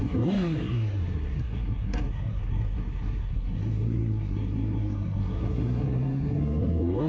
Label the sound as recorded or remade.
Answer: remade